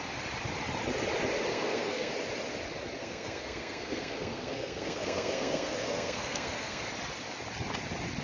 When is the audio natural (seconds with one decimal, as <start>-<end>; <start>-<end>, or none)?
0.0-1.5; 2.1-3.0; 6.9-8.2